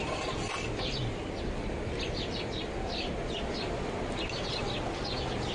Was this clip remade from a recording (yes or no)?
no